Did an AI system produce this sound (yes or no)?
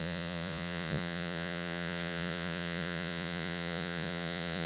yes